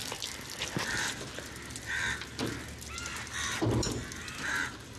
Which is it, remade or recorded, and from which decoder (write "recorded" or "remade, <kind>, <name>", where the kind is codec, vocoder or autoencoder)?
recorded